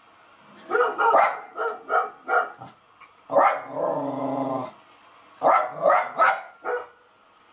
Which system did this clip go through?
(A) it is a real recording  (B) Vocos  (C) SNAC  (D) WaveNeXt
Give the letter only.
A